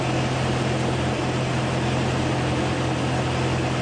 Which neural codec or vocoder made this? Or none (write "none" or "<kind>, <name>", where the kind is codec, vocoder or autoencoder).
none